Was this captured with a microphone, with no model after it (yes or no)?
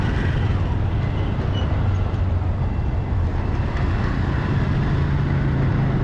yes